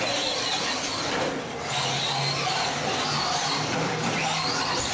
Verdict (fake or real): real